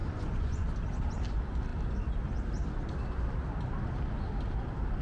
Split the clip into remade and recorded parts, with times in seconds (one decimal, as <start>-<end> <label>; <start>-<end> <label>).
0.0-0.6 remade; 0.6-5.0 recorded